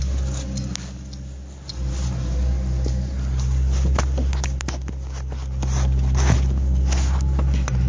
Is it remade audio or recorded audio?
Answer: recorded